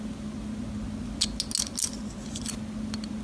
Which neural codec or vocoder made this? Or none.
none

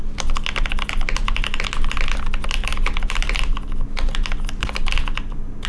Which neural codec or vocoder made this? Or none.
none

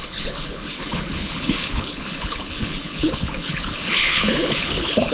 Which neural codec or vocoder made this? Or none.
codec, HILCodec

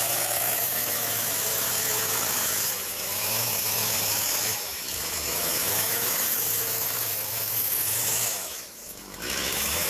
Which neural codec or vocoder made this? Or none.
autoencoder, DAC-VAE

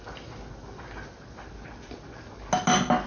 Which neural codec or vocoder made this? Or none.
none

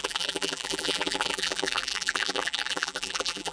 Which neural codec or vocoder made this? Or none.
vocoder, BigVGAN v2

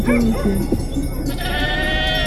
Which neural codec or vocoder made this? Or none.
none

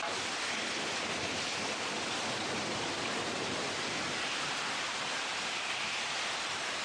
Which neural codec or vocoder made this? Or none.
vocoder, BigVGAN v2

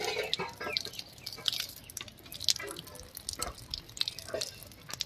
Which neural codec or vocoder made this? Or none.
none